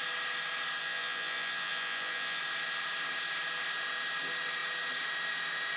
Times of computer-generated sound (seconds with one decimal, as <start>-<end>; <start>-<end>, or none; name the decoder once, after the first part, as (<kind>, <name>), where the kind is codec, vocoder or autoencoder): 0.8-2.4 (vocoder, Vocos)